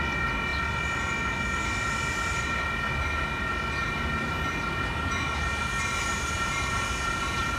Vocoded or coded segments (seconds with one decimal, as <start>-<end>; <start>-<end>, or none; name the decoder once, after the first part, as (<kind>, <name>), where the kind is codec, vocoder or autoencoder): 3.8-7.6 (vocoder, BigVGAN v2)